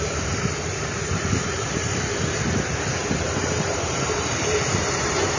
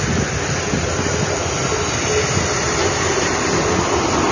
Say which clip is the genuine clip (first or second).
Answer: second